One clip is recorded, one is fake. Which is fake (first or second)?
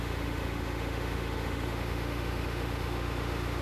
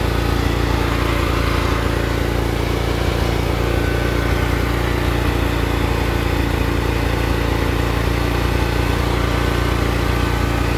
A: first